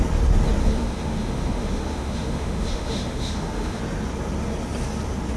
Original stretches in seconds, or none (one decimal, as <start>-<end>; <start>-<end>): 0.0-0.6; 3.8-5.4